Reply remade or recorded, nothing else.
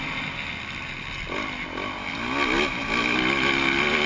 recorded